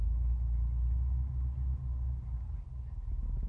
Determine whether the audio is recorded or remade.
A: recorded